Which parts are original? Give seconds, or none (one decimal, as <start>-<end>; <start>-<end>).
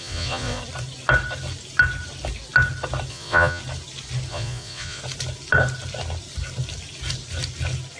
0.6-3.1; 3.6-4.3; 5.0-8.0